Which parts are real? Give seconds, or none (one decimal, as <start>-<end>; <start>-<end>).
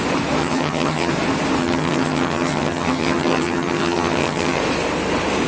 0.0-0.4; 1.1-1.6; 4.6-5.5